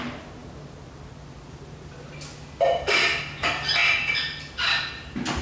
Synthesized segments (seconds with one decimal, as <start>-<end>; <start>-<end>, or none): none